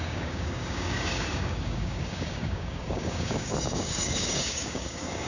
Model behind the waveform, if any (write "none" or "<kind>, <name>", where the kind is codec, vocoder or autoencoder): codec, DAC